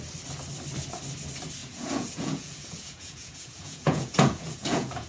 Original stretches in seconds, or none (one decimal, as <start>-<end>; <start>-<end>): 0.0-1.6